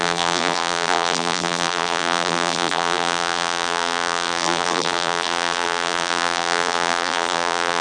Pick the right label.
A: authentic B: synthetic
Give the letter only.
B